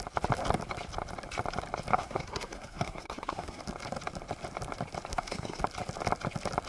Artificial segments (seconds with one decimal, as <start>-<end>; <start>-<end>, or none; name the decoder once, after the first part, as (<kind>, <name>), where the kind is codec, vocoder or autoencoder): 1.9-3.6 (codec, SNAC); 5.1-5.6